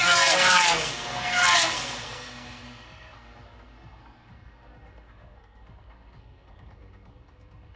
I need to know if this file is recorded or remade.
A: remade